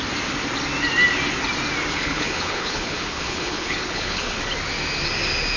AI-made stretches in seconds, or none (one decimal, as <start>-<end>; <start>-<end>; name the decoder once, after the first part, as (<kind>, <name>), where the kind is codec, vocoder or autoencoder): 1.9-4.4 (codec, HILCodec)